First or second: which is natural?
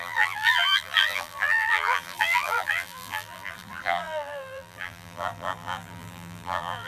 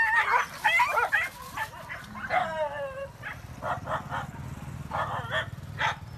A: second